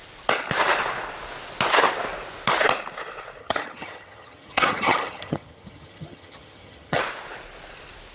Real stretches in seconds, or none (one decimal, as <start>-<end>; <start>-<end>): 0.0-3.4; 7.0-8.1